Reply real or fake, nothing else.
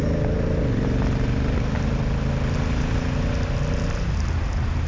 real